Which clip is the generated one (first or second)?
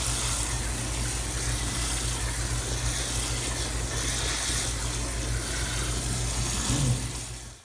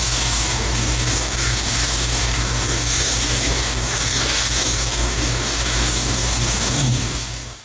second